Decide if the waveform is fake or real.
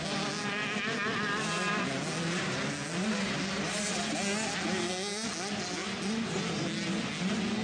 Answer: real